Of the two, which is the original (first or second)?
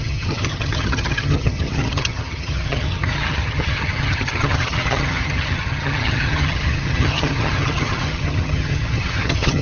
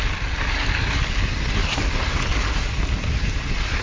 second